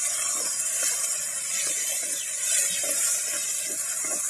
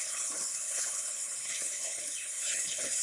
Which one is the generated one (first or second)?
second